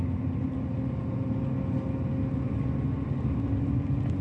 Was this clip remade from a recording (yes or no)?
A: no